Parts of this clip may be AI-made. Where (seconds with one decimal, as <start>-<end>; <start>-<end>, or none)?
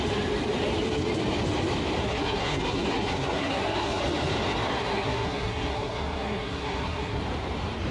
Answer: 2.0-4.0; 4.7-7.2